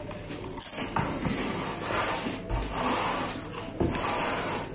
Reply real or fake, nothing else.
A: real